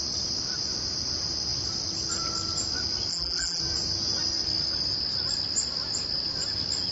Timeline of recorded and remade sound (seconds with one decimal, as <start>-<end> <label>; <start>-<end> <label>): 0.0-3.1 recorded; 3.1-3.6 remade; 3.6-6.9 recorded